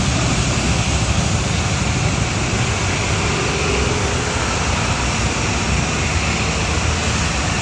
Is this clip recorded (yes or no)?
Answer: yes